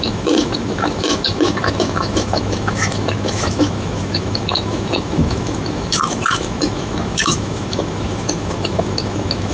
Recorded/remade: remade